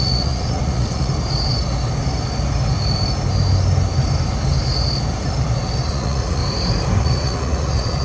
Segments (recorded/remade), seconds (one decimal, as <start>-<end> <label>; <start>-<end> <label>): 0.0-1.1 remade; 1.1-5.9 recorded; 5.9-6.4 remade; 6.4-7.0 recorded; 7.0-8.0 remade